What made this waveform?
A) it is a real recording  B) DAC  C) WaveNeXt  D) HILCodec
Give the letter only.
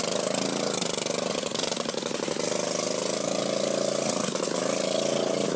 A